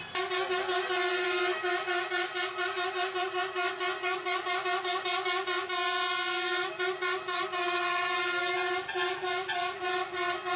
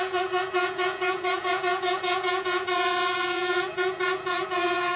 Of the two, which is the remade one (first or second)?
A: second